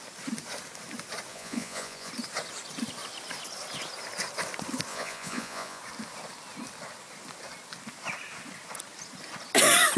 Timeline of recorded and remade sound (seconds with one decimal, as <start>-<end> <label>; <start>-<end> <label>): 0.0-1.3 recorded; 1.3-2.1 remade; 2.1-4.9 recorded; 4.9-5.8 remade; 5.8-10.0 recorded